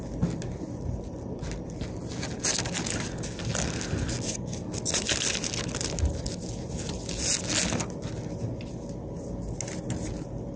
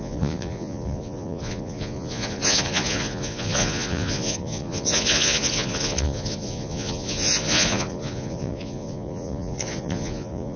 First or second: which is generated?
second